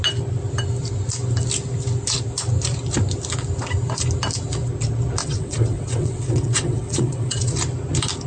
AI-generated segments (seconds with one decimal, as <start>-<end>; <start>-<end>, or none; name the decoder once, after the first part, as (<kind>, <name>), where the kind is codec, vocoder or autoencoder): 5.2-7.5 (vocoder, WaveNeXt)